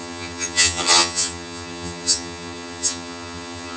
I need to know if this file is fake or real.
fake